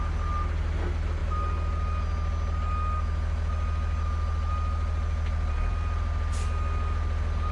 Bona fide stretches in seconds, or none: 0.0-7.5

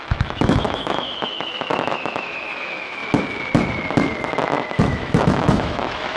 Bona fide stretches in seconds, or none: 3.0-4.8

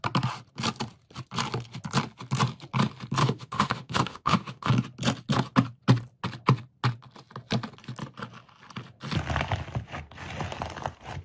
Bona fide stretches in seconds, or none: 0.0-3.2; 4.7-11.2